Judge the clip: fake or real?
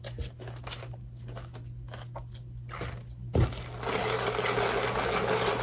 real